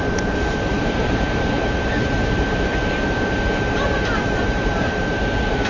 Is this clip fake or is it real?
fake